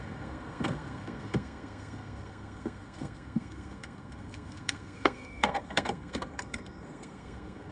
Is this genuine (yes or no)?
no